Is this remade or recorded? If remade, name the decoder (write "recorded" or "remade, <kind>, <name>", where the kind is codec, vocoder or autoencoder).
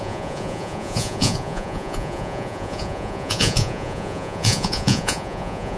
remade, vocoder, Vocos